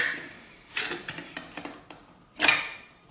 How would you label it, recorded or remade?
recorded